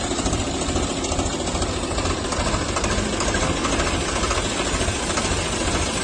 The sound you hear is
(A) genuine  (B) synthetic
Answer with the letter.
A